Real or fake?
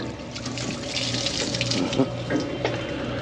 real